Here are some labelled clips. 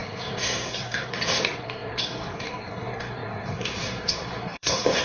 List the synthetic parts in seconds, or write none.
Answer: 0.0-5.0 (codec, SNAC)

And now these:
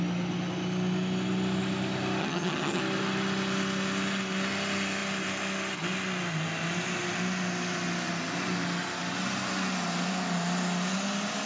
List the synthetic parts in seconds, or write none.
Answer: 2.2-2.8 (vocoder, HiFi-GAN)

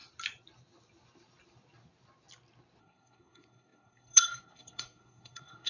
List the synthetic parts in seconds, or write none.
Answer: 2.8-5.7 (codec, SNAC)